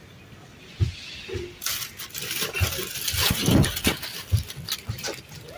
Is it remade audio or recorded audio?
recorded